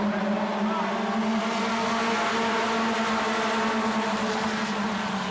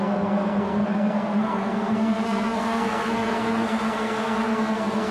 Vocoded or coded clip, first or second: second